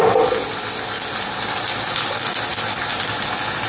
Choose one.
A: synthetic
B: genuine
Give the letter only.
B